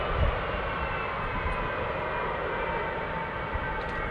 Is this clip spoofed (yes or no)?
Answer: no